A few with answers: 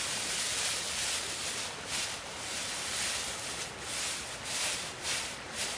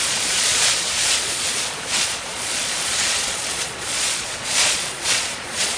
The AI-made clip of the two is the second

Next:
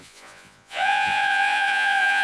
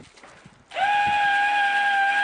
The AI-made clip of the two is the first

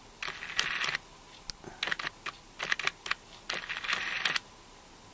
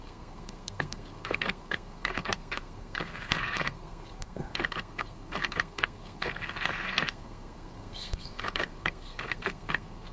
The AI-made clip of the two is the second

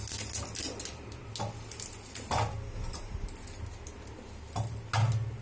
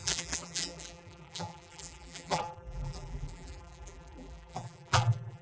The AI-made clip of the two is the second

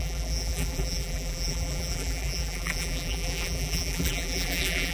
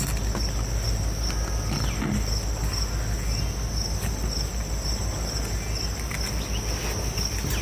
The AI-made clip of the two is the first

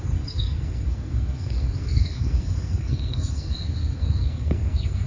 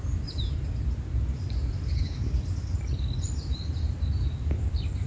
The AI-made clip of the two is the first